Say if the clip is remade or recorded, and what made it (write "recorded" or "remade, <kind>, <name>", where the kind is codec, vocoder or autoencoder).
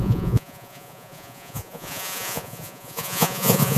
remade, vocoder, Vocos